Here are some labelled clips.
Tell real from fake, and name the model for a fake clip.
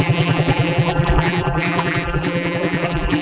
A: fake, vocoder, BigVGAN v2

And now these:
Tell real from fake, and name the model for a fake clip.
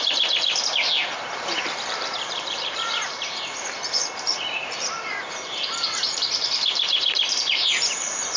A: fake, vocoder, BigVGAN v2